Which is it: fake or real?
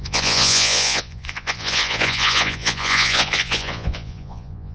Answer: fake